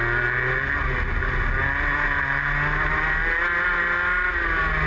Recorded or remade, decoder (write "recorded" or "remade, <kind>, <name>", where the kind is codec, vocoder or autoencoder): recorded